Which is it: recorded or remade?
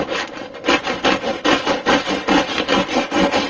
recorded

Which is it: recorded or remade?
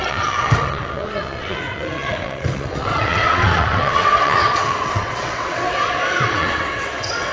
remade